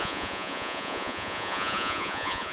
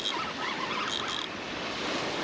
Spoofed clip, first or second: first